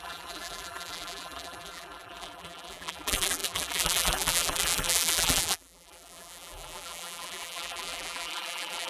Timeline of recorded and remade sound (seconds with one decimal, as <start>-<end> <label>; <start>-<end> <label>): 0.0-8.9 remade